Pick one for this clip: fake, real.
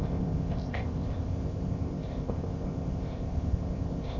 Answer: fake